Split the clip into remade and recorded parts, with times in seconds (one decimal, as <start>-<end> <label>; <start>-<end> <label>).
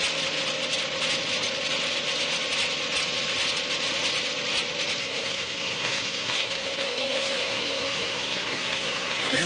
0.0-5.0 recorded; 5.0-9.5 remade